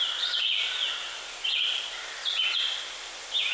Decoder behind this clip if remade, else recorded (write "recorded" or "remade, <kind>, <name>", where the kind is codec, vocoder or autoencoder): recorded